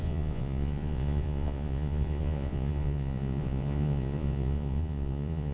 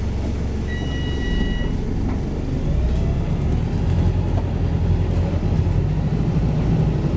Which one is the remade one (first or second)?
first